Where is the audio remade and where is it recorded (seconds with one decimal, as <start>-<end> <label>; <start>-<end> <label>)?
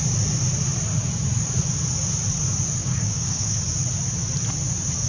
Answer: 0.0-2.8 recorded; 2.8-3.6 remade; 3.6-5.1 recorded